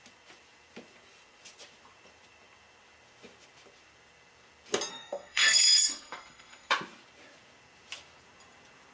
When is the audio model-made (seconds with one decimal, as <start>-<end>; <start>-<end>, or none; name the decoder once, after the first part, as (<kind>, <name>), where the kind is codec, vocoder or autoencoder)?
4.9-6.7 (codec, SNAC)